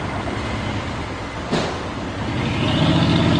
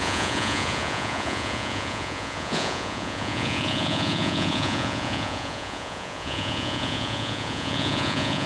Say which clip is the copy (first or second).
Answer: second